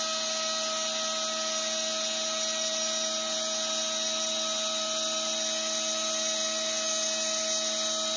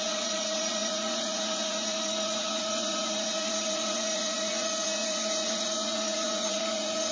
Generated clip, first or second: second